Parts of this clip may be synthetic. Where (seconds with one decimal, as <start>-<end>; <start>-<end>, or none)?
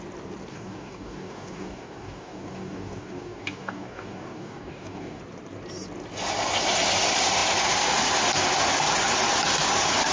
0.5-5.2